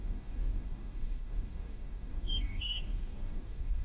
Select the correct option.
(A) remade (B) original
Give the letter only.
A